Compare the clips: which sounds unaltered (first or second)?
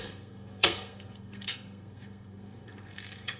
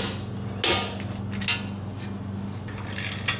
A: second